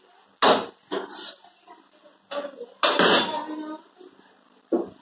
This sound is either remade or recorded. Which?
recorded